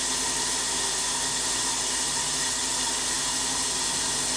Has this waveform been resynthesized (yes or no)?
no